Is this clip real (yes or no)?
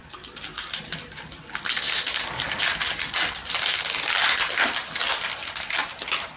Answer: yes